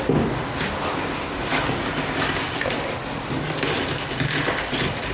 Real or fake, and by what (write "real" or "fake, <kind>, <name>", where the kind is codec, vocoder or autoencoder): real